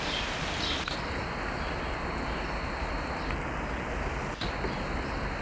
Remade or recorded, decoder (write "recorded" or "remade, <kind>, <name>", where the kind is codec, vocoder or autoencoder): recorded